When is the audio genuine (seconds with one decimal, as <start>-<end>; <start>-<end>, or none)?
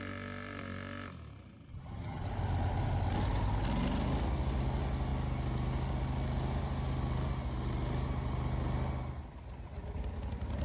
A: 0.0-1.7; 2.2-10.6